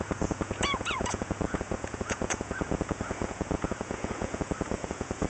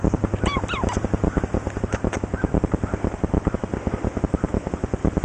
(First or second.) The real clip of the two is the second